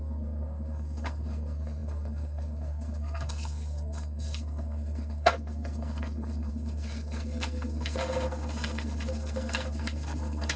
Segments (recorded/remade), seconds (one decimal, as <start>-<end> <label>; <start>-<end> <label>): 0.0-10.6 remade